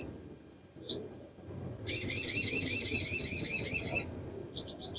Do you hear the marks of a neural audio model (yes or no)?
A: yes